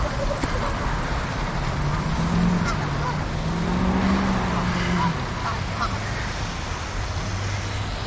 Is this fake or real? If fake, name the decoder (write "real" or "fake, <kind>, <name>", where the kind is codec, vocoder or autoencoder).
real